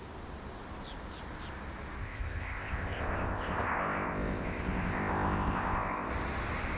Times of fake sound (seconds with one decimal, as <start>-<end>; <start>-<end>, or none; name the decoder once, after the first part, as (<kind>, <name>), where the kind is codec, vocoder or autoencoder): 2.0-6.1 (codec, ZipCodec)